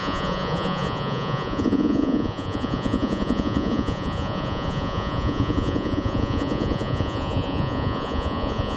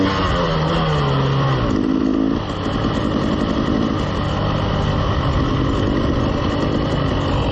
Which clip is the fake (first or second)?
first